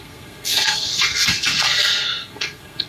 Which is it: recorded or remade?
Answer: remade